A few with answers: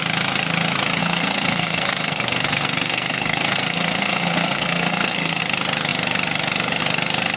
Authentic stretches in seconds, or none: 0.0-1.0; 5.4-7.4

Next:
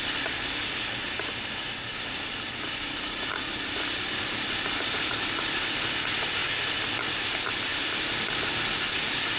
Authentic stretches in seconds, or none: 0.0-9.4

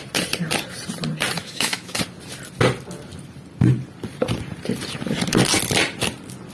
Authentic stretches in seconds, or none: 0.0-1.4; 2.0-6.5

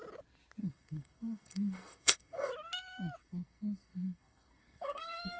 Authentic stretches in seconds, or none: 0.0-0.6; 2.5-3.2